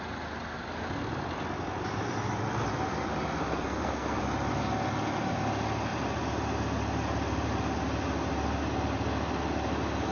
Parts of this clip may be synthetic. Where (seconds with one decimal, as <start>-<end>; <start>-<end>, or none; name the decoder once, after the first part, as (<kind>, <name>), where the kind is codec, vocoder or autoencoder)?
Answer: 3.4-4.2 (codec, SNAC)